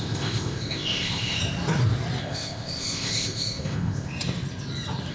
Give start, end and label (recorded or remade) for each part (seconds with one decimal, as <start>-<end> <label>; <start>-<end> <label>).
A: 0.0-1.4 remade; 1.4-2.2 recorded; 2.2-4.1 remade; 4.1-5.1 recorded